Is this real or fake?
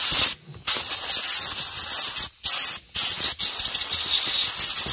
real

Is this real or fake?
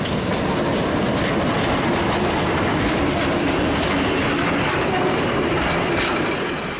real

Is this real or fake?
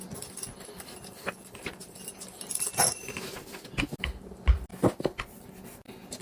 real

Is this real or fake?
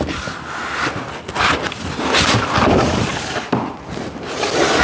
real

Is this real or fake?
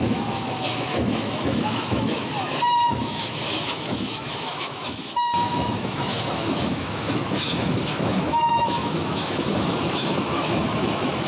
fake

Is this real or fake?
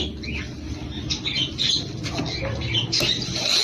real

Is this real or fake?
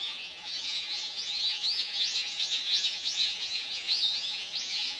fake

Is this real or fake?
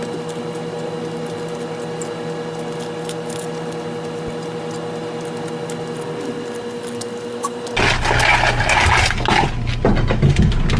real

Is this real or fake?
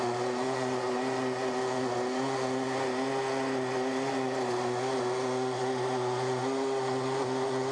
real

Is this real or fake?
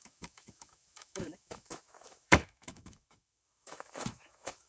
fake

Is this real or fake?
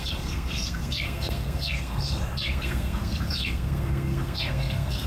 fake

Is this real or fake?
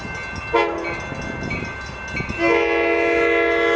real